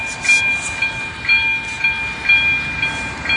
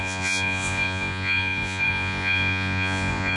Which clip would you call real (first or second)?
first